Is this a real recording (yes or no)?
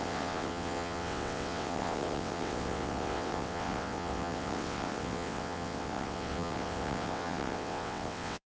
no